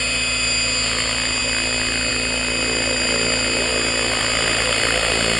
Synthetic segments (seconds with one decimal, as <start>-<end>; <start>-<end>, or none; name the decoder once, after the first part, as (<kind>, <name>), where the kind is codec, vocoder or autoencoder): none